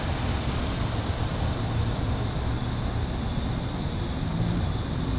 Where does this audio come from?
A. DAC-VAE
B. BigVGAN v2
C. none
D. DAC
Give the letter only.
C